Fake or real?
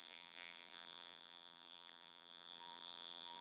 fake